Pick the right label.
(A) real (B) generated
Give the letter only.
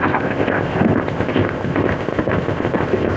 B